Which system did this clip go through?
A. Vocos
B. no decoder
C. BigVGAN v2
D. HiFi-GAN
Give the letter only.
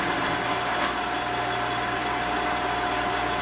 B